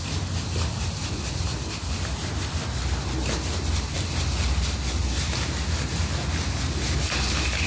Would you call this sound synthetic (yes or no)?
no